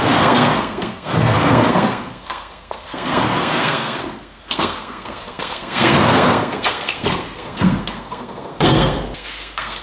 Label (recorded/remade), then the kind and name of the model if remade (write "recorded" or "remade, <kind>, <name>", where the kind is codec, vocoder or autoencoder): remade, codec, SNAC